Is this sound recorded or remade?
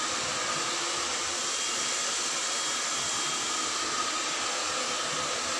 recorded